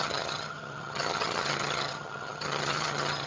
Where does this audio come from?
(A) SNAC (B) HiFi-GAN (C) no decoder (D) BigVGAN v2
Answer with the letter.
B